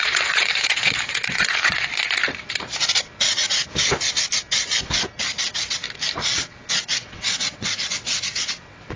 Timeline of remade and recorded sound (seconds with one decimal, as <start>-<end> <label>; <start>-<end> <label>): 0.0-1.9 remade; 1.9-6.8 recorded; 6.8-9.0 remade